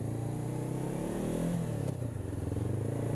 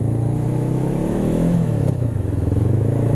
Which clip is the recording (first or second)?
first